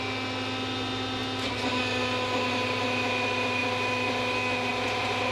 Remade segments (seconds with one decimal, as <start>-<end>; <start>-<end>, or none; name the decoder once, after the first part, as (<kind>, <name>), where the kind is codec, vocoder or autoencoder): none